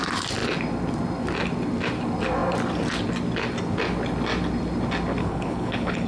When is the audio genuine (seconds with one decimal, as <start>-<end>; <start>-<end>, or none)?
0.0-5.2